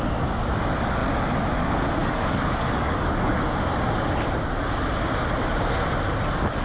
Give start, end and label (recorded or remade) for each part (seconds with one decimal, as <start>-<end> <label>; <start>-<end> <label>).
0.0-2.0 recorded; 2.0-3.3 remade; 3.3-6.6 recorded